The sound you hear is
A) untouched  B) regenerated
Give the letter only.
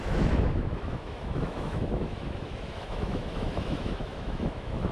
B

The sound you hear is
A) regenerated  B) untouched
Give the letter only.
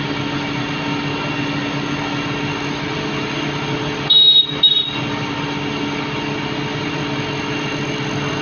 B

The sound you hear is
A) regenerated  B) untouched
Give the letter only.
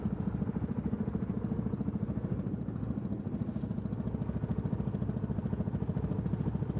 B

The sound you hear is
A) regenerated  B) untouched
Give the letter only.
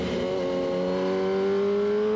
B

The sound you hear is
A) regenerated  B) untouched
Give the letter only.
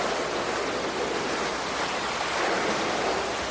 B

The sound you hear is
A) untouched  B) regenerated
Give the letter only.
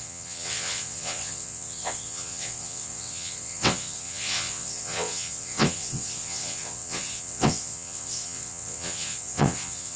B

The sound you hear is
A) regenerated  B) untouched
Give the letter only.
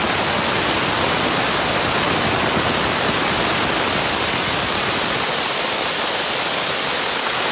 B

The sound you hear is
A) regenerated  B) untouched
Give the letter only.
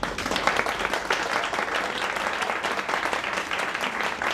B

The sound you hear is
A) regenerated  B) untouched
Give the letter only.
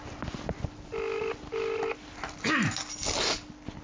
B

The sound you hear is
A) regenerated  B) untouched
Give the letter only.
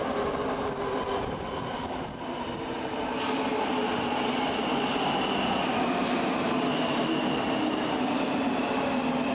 B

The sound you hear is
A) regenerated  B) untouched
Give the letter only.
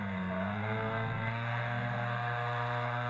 A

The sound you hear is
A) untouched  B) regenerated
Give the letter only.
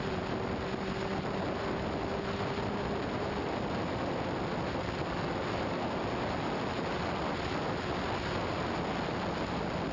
A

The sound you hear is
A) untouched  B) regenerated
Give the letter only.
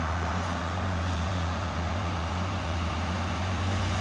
B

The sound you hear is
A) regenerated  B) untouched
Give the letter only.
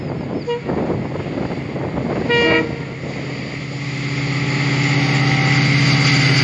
B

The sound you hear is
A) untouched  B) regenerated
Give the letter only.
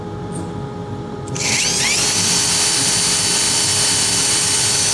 A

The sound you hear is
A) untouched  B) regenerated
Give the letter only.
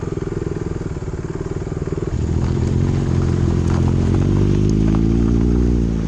A